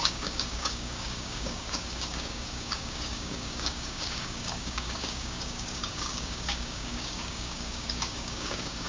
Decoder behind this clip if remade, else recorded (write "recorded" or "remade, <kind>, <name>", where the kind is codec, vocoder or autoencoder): remade, codec, DAC